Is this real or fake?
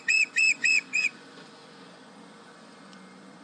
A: fake